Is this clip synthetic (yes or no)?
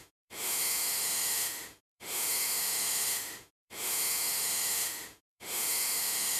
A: yes